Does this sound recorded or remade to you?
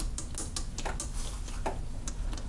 recorded